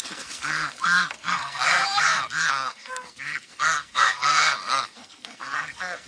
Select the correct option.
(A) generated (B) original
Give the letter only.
A